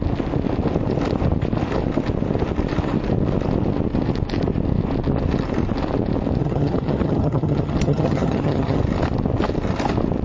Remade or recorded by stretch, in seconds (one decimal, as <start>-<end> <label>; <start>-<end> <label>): 0.0-6.4 recorded; 6.4-8.8 remade; 8.8-10.2 recorded